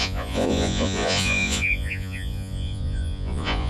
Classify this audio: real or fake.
fake